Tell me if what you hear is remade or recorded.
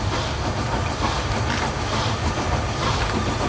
recorded